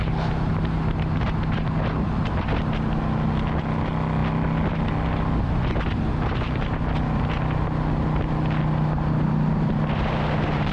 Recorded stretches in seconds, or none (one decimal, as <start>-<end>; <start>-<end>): 0.0-10.7